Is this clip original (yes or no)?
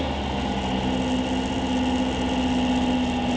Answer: yes